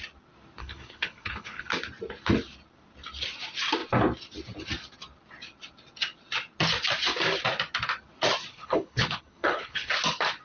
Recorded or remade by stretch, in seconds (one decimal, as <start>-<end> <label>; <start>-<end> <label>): 0.0-0.6 recorded; 0.6-1.7 remade; 1.7-8.5 recorded; 8.5-9.9 remade; 9.9-10.4 recorded